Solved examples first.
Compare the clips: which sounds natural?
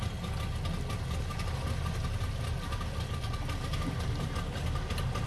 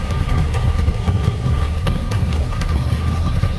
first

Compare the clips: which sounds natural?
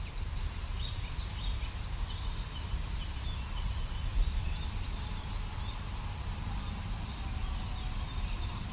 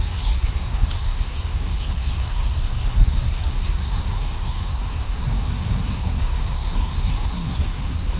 first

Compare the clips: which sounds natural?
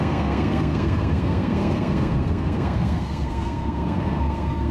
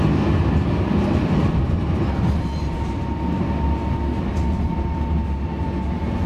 second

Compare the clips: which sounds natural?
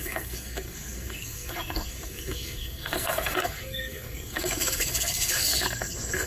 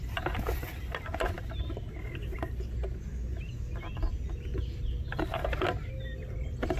second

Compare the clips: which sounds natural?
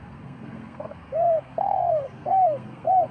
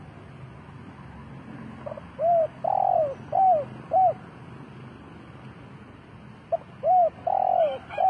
second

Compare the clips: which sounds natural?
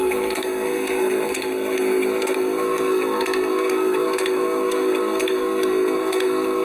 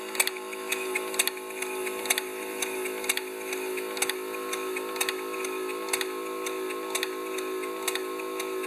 second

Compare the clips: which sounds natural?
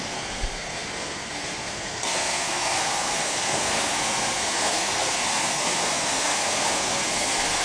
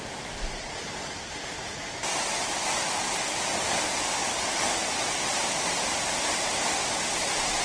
second